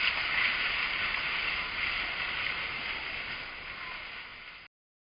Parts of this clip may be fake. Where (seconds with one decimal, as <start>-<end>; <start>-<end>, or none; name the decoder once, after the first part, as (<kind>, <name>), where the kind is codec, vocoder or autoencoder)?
1.1-1.8 (vocoder, BigVGAN v2)